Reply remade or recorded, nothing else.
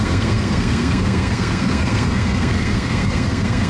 remade